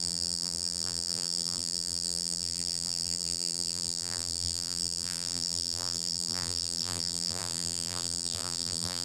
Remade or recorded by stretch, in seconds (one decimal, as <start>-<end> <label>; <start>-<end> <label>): 0.0-9.0 remade